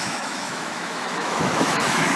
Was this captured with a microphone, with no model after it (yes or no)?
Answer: no